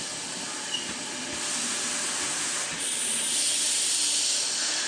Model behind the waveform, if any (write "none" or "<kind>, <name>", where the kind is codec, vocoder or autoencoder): none